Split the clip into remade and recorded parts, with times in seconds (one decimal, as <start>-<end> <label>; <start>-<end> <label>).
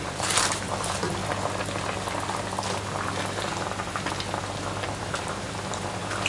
0.0-1.2 remade; 1.2-5.0 recorded; 5.0-6.3 remade